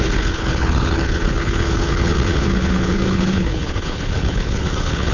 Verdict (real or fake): fake